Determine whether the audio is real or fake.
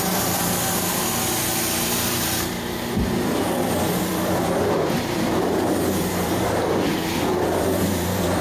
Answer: fake